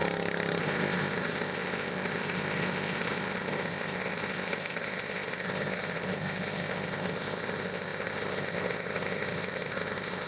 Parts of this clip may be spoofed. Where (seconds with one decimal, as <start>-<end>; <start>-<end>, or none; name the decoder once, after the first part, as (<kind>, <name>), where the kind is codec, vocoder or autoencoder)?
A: 0.6-10.3 (codec, ZipCodec)